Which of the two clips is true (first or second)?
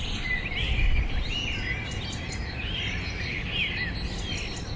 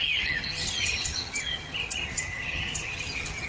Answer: first